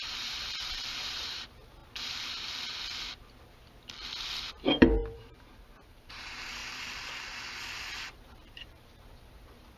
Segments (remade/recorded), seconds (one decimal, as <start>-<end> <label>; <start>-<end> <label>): 0.0-1.8 remade; 1.8-4.5 recorded; 4.5-6.6 remade; 6.6-7.8 recorded; 7.8-9.8 remade